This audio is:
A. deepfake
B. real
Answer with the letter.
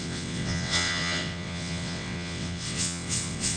A